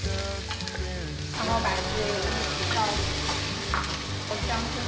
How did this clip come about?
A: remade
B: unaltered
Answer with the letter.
B